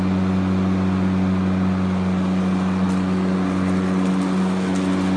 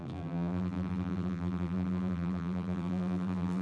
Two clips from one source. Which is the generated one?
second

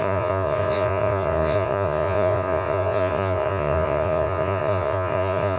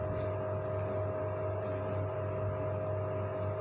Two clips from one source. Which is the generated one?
first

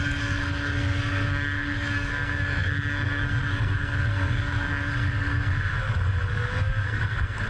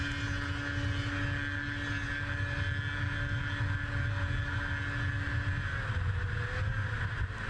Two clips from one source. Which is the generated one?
first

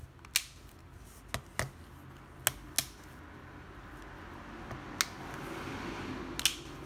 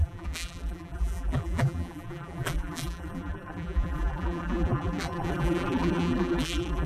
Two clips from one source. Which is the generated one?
second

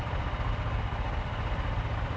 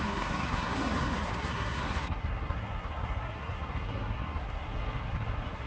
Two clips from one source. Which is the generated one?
second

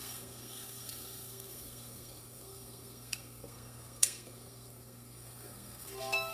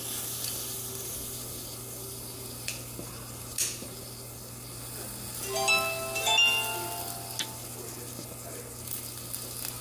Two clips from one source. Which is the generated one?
first